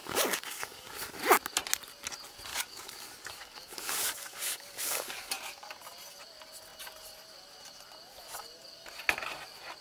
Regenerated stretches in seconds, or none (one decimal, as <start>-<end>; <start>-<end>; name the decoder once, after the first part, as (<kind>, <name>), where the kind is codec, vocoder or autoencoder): 0.0-1.2 (codec, DAC); 2.5-5.7